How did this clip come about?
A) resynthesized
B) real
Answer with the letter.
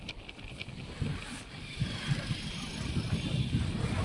B